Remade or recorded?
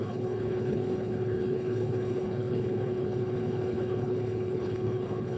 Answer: remade